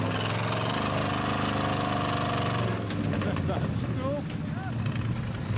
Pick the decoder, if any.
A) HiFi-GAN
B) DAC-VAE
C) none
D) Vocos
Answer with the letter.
C